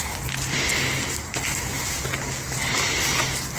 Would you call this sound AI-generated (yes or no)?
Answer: no